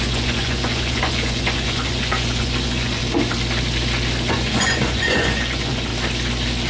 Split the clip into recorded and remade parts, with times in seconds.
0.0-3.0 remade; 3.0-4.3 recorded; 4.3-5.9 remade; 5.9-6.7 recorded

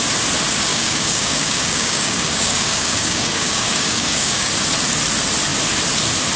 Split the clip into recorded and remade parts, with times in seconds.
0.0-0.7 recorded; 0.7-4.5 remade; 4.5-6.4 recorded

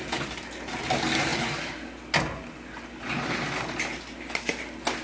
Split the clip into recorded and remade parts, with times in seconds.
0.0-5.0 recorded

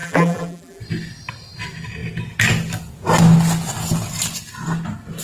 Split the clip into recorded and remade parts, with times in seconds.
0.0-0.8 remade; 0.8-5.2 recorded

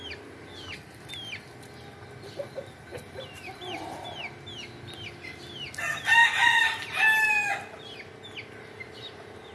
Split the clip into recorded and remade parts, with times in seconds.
0.0-2.9 recorded; 2.9-3.8 remade; 3.8-6.2 recorded; 6.2-7.0 remade; 7.0-9.5 recorded

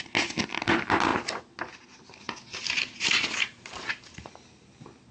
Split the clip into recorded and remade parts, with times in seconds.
0.0-2.6 recorded; 2.6-4.3 remade; 4.3-5.1 recorded